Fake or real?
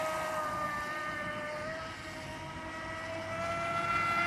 real